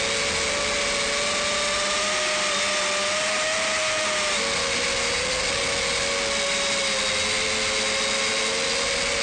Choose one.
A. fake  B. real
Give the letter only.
B